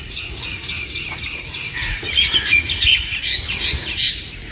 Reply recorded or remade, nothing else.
remade